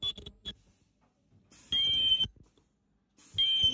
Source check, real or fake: real